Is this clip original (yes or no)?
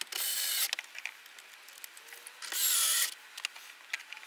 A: yes